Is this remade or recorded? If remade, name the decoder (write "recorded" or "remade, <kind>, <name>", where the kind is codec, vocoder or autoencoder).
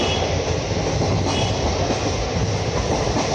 recorded